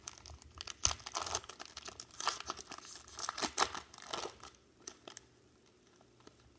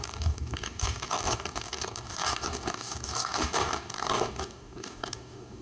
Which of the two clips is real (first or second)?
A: first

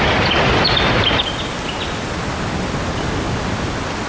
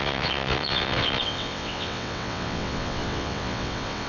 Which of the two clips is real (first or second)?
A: first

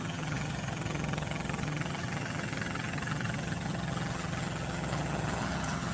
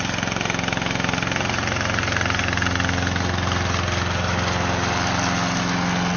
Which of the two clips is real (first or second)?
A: second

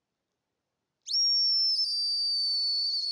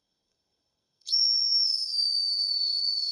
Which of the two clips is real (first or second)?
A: first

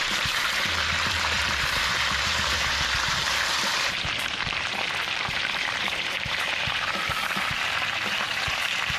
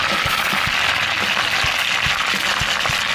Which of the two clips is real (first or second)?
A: second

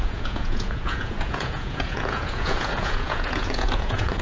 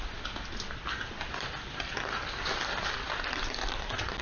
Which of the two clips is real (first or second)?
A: second